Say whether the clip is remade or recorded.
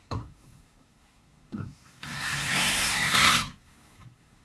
remade